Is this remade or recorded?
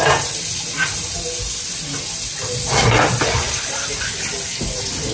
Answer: recorded